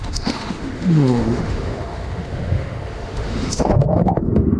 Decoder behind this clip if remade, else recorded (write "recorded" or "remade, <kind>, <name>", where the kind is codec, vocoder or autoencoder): remade, autoencoder, DAC-VAE